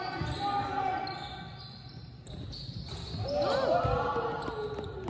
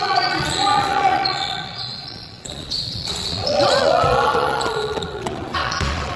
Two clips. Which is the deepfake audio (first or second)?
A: second